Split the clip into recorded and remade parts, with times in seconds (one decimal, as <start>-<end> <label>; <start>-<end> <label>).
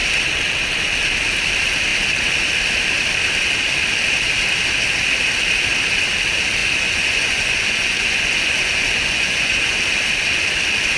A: 0.0-6.6 recorded; 6.6-9.8 remade; 9.8-11.0 recorded